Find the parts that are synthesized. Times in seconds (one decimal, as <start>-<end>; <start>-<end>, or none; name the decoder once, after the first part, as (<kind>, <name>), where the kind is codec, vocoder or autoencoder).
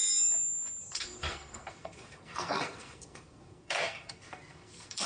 0.8-5.1 (codec, SNAC)